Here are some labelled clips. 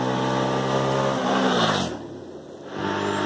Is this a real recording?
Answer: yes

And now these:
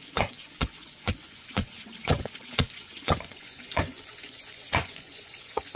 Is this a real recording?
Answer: no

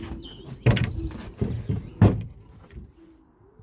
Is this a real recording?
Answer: yes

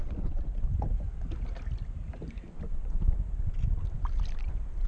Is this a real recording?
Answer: yes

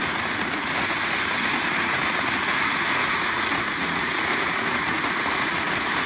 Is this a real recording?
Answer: no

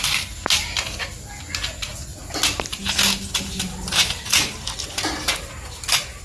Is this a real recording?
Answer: yes